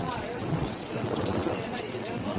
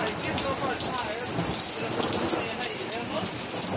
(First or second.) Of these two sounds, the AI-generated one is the first